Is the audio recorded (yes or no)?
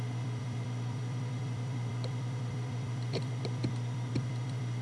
no